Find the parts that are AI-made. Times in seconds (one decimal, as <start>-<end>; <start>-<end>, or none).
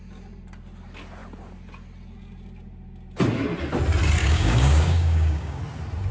4.2-5.6